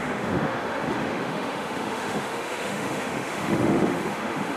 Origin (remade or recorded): remade